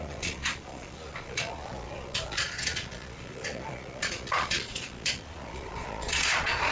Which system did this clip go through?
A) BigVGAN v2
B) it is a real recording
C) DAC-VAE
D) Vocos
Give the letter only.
D